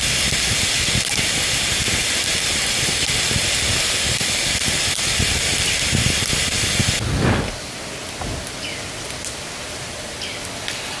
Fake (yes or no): no